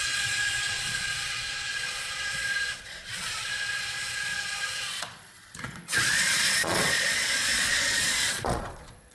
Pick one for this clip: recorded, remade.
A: remade